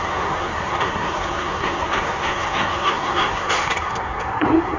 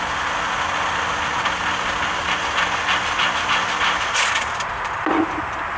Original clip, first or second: second